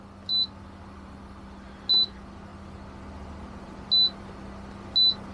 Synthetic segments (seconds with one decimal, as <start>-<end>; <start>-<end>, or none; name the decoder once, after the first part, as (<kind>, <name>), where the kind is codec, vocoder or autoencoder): none